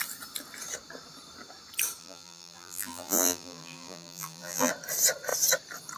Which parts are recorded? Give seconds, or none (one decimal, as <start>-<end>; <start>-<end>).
0.0-2.0; 4.7-6.0